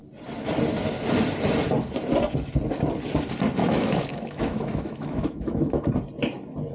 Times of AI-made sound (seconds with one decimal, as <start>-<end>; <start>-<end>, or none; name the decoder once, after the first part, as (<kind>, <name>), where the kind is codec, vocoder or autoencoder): 3.6-5.9 (autoencoder, DAC-VAE)